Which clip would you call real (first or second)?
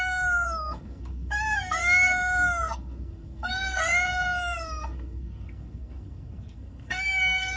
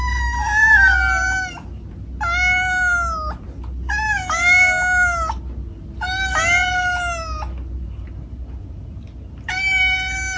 second